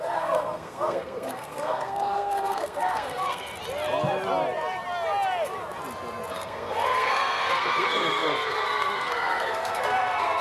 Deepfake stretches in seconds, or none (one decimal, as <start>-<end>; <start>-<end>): 0.0-3.5; 6.3-10.4